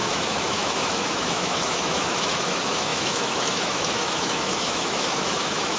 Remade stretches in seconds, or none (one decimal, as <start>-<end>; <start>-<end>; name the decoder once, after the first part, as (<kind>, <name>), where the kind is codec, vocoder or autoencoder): 0.0-5.8 (autoencoder, DAC-VAE)